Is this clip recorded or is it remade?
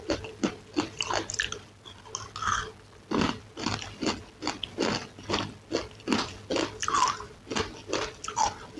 recorded